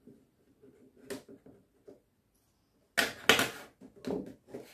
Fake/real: real